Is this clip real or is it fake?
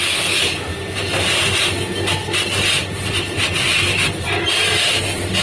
real